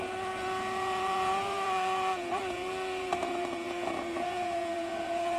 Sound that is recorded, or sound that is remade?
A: remade